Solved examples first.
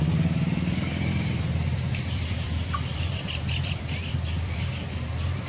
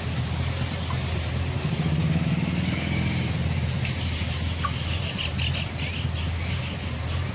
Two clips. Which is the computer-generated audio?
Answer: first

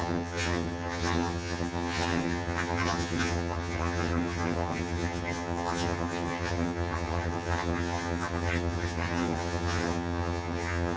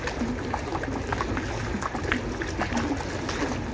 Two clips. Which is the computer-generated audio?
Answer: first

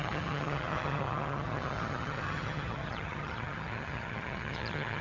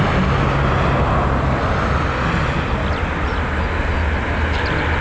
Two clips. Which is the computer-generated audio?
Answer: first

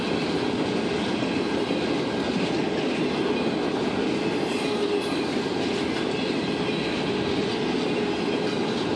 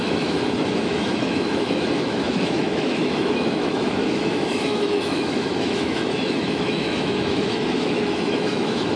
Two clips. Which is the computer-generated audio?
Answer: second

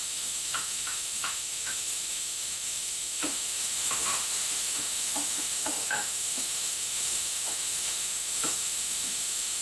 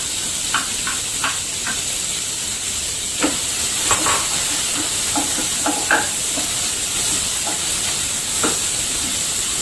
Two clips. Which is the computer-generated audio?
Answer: first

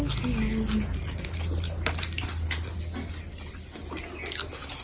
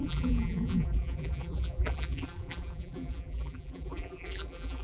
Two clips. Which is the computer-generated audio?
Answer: second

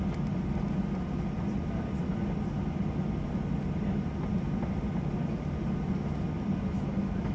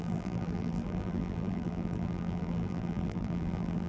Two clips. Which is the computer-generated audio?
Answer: second